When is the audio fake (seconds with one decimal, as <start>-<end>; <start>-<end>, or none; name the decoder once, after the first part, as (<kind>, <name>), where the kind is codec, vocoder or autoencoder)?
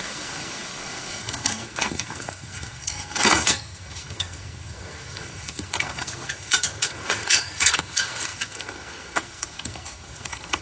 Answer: 0.0-10.6 (codec, SNAC)